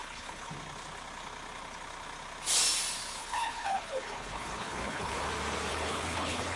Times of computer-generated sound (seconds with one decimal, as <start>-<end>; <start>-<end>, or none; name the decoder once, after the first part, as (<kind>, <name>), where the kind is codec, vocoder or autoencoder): 0.0-0.5 (codec, HILCodec); 3.2-5.3; 5.7-6.6